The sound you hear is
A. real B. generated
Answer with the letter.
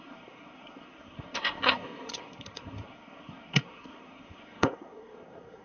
B